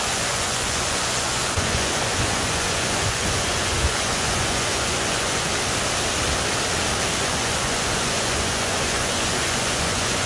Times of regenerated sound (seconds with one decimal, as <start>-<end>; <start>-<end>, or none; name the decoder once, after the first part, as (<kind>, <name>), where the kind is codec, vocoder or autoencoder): 0.0-5.5 (vocoder, Vocos); 7.2-10.3